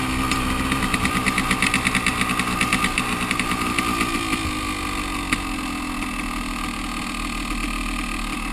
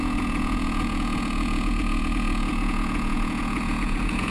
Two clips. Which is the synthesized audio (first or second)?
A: second